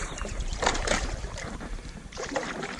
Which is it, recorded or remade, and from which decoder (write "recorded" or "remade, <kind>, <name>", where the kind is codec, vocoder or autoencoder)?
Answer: remade, vocoder, BigVGAN v2